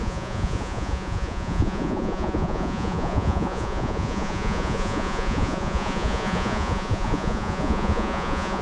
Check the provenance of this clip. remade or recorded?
remade